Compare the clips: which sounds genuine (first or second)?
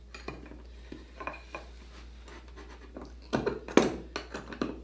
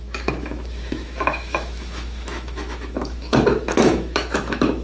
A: first